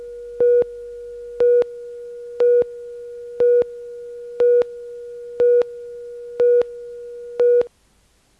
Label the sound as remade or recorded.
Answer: recorded